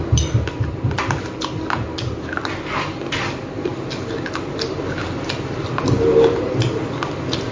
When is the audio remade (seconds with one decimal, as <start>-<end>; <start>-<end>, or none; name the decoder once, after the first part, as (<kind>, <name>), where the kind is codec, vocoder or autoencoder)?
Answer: none